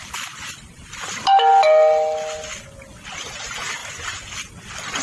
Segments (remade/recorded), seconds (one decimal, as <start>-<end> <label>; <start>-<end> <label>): 0.0-5.0 recorded